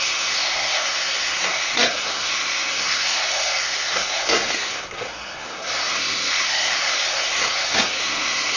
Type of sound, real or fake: fake